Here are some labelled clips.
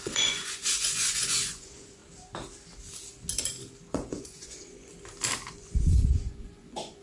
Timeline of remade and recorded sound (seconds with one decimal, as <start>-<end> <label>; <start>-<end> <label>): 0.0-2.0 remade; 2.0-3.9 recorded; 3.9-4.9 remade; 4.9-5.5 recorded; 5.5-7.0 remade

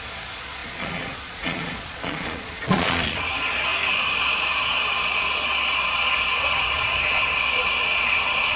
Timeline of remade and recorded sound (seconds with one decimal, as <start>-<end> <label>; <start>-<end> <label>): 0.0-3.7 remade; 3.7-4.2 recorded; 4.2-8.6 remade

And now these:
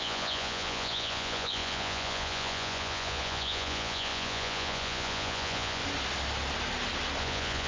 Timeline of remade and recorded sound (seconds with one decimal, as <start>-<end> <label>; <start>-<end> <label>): 0.0-5.8 remade; 5.8-7.2 recorded; 7.2-7.7 remade

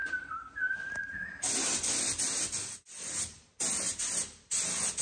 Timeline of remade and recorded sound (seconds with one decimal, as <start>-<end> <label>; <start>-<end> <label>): 0.0-5.0 recorded

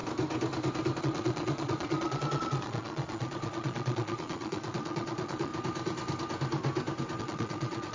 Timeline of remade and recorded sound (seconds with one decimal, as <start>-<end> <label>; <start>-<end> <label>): 0.0-1.0 recorded; 1.0-5.5 remade; 5.5-7.2 recorded; 7.2-7.9 remade

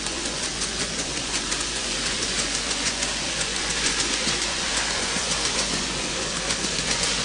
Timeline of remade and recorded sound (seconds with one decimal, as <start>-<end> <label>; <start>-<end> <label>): 0.0-7.2 remade